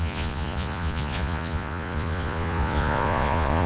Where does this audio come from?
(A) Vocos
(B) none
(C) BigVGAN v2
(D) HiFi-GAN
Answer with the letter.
A